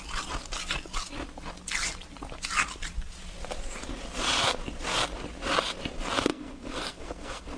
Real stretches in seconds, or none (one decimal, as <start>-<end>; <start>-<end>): 0.0-6.3